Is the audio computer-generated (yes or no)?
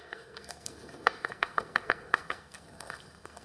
yes